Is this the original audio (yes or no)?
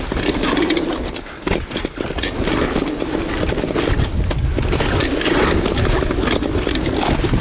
yes